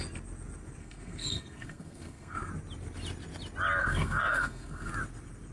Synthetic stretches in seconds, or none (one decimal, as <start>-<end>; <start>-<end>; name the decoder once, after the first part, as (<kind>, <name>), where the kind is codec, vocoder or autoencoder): 0.8-2.5 (codec, SNAC); 3.8-4.9